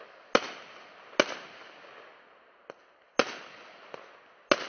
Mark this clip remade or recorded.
recorded